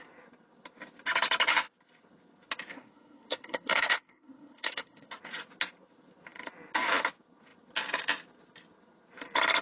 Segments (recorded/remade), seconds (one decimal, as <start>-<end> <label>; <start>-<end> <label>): 0.0-2.7 recorded; 2.7-5.1 remade; 5.1-9.6 recorded